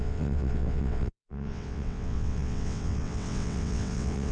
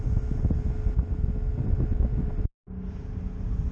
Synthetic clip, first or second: first